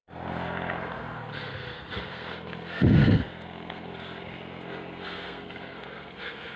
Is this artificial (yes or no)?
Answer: yes